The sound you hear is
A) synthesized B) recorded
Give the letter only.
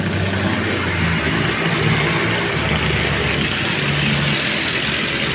B